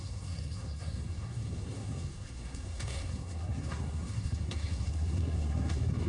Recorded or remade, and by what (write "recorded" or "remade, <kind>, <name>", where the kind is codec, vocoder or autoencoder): remade, codec, SNAC